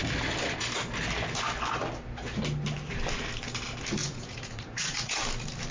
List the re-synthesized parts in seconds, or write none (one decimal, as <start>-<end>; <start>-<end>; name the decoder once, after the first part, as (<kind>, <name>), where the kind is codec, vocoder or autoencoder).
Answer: 4.0-5.2 (vocoder, Vocos)